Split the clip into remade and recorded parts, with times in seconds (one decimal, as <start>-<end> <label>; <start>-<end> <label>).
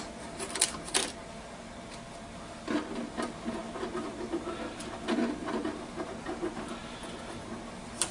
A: 0.0-8.1 recorded